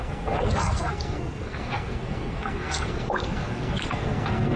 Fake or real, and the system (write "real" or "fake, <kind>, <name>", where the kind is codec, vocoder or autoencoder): fake, codec, SNAC